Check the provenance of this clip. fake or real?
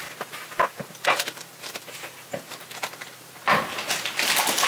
real